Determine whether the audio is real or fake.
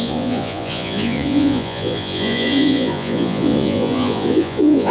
fake